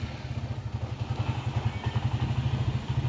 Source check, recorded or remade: recorded